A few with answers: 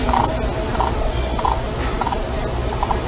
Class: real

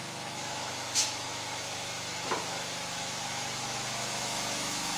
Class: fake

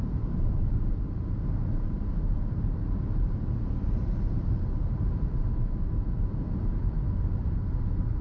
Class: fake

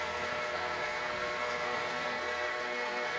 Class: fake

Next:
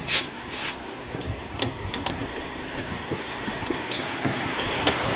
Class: fake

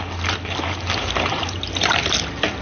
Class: real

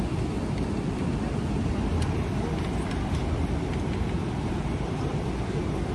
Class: real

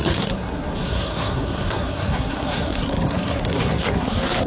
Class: fake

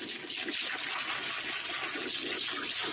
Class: real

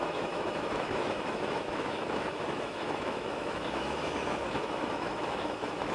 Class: fake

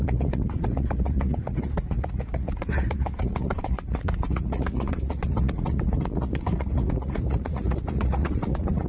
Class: fake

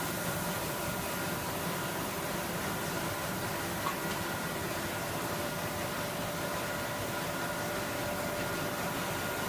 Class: real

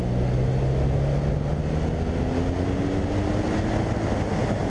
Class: real